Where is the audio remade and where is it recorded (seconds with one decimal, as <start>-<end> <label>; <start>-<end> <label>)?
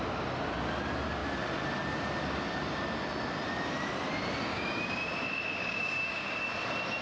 0.0-4.5 recorded; 4.5-5.1 remade; 5.1-5.5 recorded; 5.5-6.4 remade; 6.4-7.0 recorded